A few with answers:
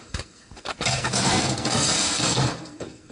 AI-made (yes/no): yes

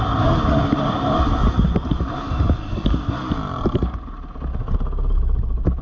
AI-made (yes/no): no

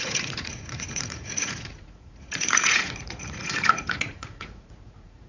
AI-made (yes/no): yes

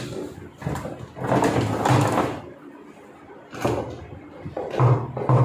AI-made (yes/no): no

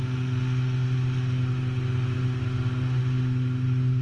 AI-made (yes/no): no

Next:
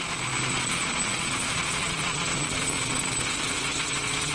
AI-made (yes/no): yes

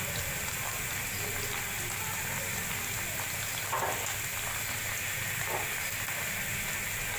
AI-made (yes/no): no